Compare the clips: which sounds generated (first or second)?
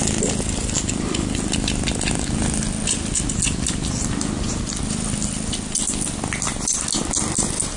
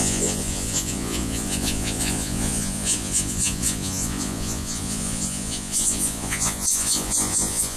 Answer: second